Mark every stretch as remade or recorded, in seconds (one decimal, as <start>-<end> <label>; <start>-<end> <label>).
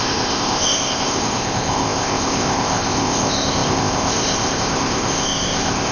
0.0-5.9 remade